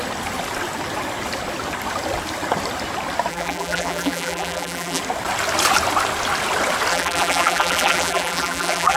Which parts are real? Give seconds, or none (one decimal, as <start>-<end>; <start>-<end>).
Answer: 0.0-3.3; 5.0-6.9